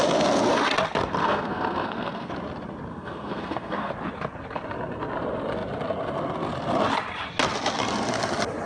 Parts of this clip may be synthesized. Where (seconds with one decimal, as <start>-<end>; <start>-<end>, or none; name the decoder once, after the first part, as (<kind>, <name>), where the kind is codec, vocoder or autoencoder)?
1.2-2.3 (codec, SNAC); 2.9-3.9